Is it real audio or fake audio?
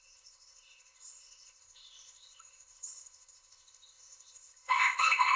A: fake